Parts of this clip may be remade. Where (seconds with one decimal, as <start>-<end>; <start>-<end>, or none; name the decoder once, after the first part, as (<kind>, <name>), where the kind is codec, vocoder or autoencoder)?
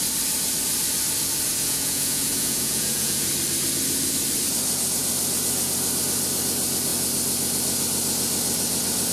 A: 1.5-3.3 (vocoder, Vocos)